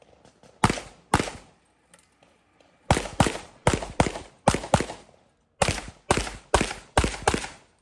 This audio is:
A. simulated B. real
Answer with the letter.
B